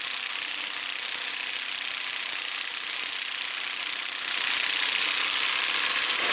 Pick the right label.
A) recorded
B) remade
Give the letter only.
A